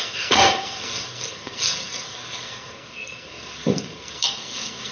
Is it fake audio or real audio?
fake